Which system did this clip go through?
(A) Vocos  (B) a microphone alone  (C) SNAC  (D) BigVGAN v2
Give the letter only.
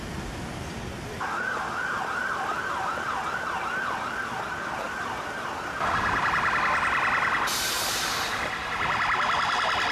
B